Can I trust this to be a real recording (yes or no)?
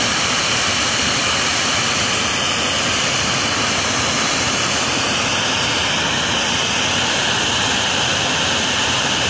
yes